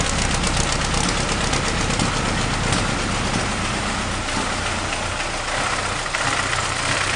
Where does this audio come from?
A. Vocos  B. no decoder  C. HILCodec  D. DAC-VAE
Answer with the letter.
B